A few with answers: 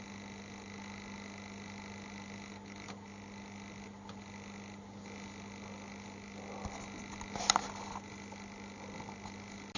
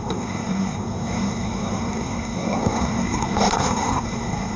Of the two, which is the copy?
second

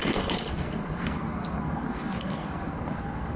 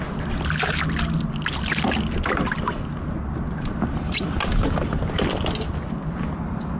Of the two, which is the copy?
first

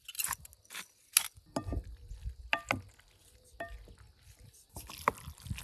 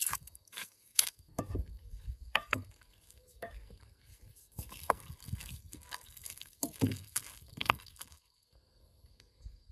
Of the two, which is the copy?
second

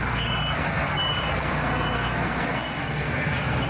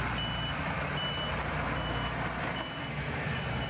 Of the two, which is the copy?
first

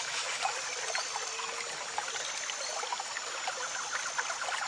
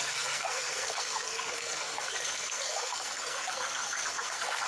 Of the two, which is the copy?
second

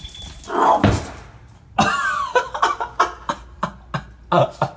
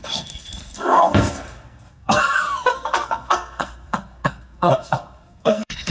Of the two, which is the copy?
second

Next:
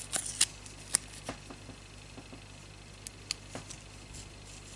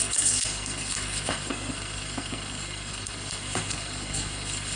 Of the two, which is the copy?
second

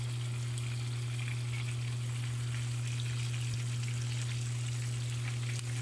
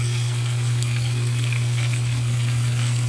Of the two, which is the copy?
second